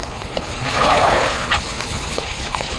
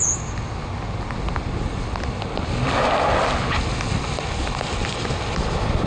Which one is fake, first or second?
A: first